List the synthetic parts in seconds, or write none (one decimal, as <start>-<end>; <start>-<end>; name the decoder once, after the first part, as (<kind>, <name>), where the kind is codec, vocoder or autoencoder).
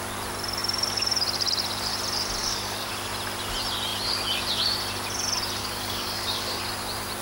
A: 2.4-2.9 (codec, DAC); 5.6-6.6